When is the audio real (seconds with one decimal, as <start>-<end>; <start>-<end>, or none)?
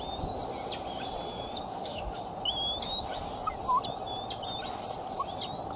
0.0-1.7; 2.2-5.8